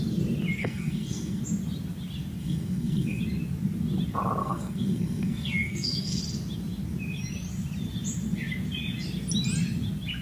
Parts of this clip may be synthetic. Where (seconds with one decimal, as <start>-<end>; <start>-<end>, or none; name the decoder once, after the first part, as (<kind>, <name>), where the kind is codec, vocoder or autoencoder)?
0.6-1.4 (codec, SNAC); 2.4-3.2; 4.4-6.2